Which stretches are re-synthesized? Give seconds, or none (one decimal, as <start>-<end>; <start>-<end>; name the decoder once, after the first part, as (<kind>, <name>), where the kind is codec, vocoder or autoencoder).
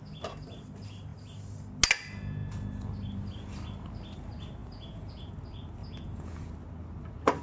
4.6-5.3 (vocoder, Vocos); 5.8-6.5